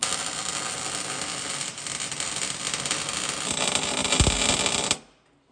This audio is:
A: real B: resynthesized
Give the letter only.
A